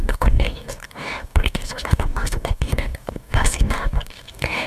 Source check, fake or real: fake